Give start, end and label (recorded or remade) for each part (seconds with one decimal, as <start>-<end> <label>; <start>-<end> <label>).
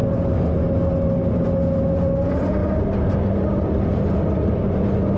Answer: 0.0-5.2 recorded